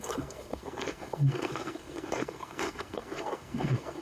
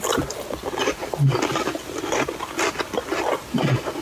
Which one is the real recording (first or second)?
second